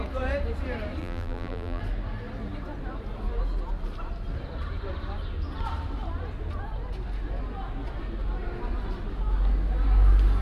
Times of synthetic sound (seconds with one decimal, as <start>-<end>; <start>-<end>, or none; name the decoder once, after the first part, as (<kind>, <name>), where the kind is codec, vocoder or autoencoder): 1.0-1.8 (vocoder, BigVGAN v2)